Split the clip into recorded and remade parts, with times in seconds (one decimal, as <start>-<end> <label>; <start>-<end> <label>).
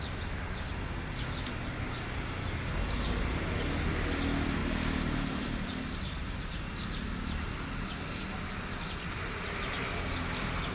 0.0-4.6 recorded; 4.6-6.6 remade; 6.6-10.7 recorded